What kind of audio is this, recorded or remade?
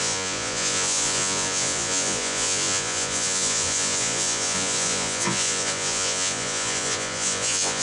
remade